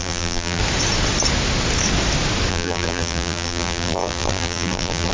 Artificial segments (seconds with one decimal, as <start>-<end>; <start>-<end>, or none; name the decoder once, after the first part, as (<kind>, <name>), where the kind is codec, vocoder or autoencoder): 0.0-0.6 (vocoder, BigVGAN v2); 2.5-5.1